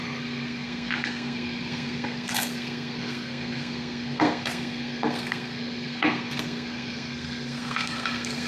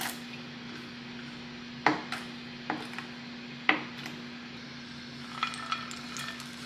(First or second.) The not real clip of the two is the first